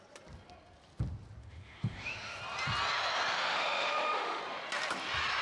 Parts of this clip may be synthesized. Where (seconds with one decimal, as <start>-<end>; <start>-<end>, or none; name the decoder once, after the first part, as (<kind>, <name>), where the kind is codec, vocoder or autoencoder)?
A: 1.4-2.4 (autoencoder, DAC-VAE); 3.3-4.4